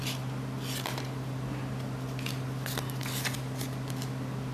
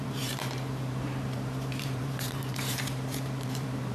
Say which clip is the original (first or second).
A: first